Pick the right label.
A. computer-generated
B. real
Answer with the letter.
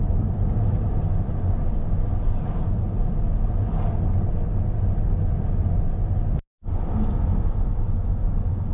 B